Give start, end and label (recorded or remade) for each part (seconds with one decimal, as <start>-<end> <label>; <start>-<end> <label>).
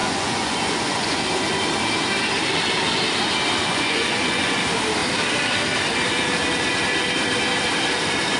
0.0-1.2 remade; 1.2-3.7 recorded; 3.7-4.6 remade; 4.6-8.4 recorded